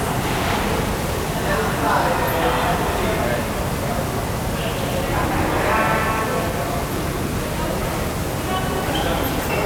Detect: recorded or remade recorded